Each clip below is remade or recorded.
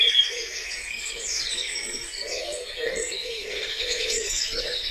remade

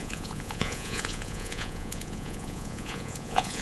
remade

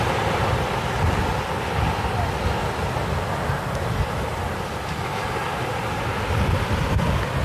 recorded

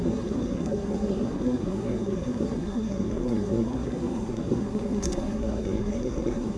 remade